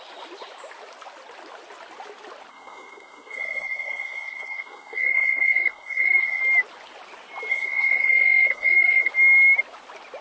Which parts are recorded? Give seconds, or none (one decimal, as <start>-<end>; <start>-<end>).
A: 0.0-2.5; 6.4-7.5; 9.1-10.2